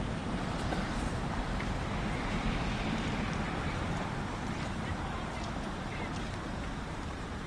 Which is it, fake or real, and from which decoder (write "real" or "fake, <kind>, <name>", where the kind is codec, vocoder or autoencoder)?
fake, vocoder, BigVGAN v2